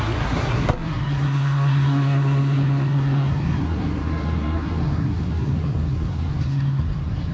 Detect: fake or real fake